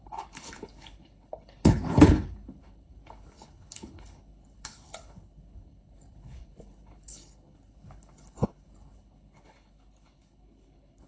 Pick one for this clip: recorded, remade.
remade